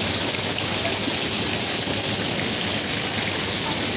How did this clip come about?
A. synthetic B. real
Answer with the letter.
B